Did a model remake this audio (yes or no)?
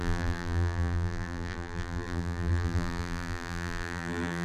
yes